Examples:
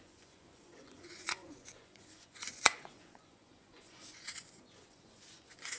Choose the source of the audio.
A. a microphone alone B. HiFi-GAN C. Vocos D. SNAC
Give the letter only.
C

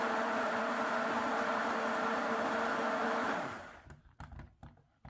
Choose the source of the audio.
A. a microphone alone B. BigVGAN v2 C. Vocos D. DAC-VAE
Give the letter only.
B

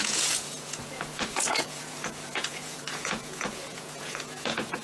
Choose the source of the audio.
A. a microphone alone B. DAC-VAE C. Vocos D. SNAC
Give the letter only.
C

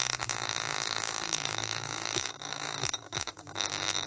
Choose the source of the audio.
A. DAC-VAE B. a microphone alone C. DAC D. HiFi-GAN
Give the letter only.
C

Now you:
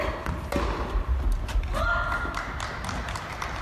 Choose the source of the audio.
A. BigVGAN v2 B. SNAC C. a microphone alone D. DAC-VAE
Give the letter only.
C